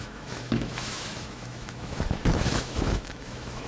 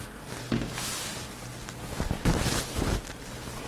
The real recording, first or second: second